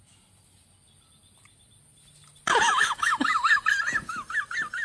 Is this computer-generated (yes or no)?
no